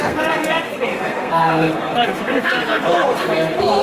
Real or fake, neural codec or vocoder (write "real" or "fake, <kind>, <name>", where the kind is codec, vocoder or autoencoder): fake, codec, SNAC